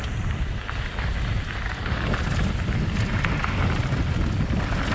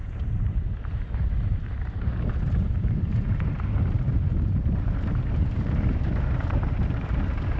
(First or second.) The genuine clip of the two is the first